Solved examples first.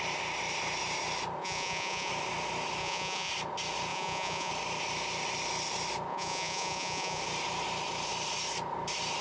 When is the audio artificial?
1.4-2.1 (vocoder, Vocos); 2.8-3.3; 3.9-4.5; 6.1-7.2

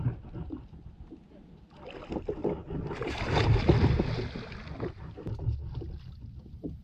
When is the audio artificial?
none

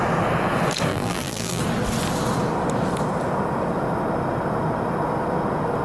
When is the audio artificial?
0.9-1.6 (vocoder, BigVGAN v2)

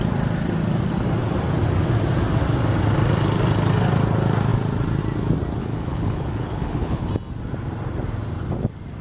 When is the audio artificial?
5.6-7.1 (codec, HILCodec)

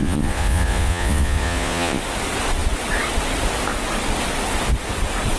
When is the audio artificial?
0.0-2.0 (vocoder, Vocos)

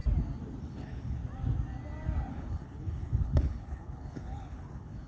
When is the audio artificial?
0.6-1.2 (codec, HILCodec); 2.3-5.1

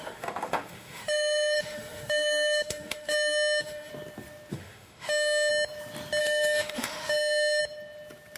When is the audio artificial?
0.0-3.9 (autoencoder, DAC-VAE); 4.5-5.5; 6.2-7.6

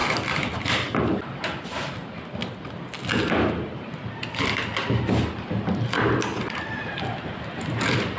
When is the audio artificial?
0.0-2.0 (vocoder, BigVGAN v2); 3.2-8.2